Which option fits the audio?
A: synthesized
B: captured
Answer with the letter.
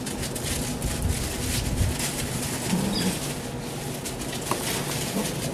B